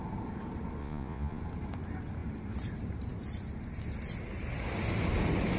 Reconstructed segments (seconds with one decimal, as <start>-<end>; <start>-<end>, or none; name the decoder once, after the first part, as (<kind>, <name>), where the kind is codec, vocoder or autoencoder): 0.8-1.4 (vocoder, Vocos)